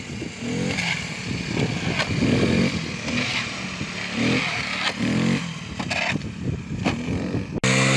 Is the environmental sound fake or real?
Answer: real